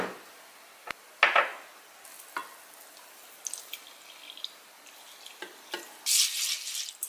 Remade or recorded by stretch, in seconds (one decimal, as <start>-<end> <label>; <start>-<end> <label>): 0.0-7.1 recorded